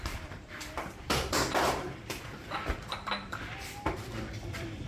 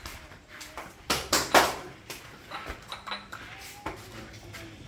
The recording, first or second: second